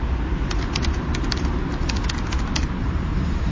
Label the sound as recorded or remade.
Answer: recorded